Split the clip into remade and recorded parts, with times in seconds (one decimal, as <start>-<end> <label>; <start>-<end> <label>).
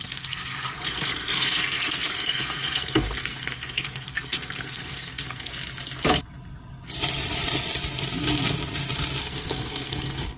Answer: 0.0-5.5 remade; 5.5-9.2 recorded; 9.2-10.4 remade